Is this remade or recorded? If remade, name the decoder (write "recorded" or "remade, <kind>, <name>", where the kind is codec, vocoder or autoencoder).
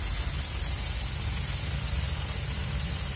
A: recorded